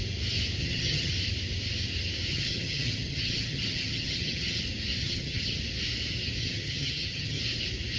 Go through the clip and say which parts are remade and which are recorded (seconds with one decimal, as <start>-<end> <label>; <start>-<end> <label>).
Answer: 0.0-0.6 recorded; 0.6-1.1 remade; 1.1-2.3 recorded; 2.3-4.6 remade; 4.6-5.0 recorded; 5.0-5.6 remade; 5.6-6.4 recorded; 6.4-7.4 remade; 7.4-8.0 recorded